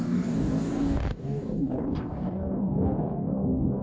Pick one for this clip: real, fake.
fake